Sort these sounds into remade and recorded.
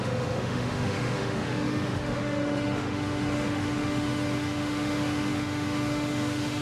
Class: remade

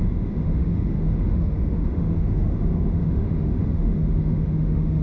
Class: remade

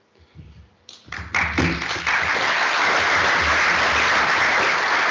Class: recorded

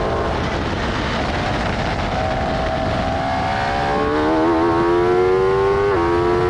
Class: recorded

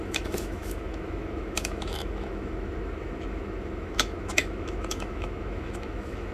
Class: remade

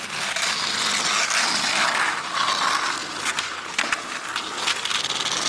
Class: recorded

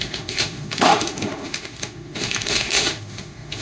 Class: remade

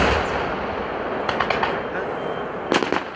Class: recorded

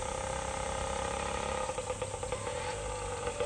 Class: recorded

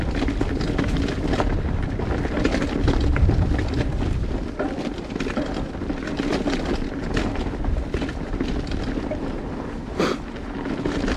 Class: recorded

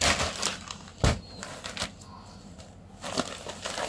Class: recorded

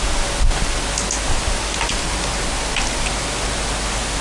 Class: recorded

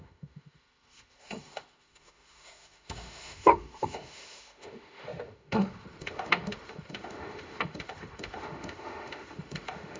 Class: remade